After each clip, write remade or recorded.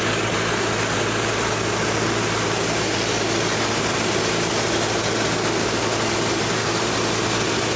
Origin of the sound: recorded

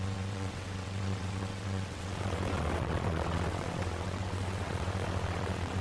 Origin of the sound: remade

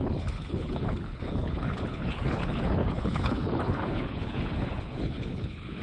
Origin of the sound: remade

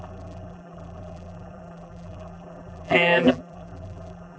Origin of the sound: remade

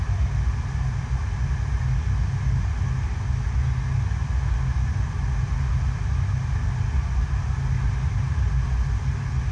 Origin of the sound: recorded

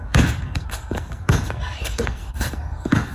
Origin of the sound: remade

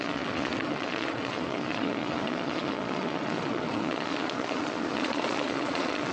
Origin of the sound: remade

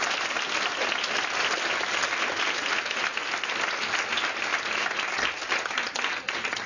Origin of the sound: recorded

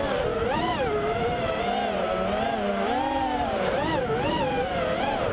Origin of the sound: recorded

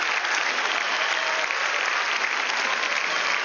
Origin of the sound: recorded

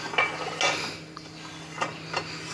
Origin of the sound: recorded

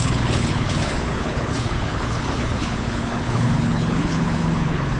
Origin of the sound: remade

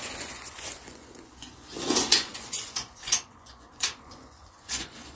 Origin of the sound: remade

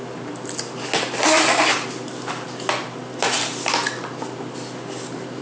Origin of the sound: recorded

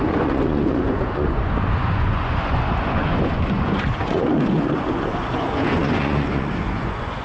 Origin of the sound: remade